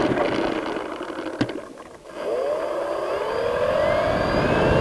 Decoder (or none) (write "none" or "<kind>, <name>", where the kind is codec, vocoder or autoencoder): none